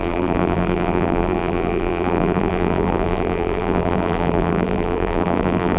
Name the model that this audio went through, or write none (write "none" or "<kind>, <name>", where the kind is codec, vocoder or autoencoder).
vocoder, BigVGAN v2